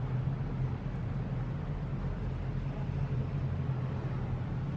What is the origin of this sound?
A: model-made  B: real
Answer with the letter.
B